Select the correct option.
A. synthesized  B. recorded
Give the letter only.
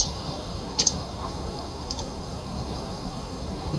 A